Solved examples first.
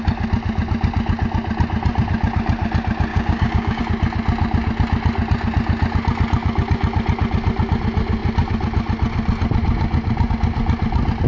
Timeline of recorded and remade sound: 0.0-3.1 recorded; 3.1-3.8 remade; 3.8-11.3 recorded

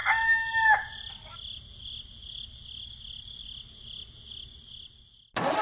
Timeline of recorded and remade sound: 0.0-5.6 recorded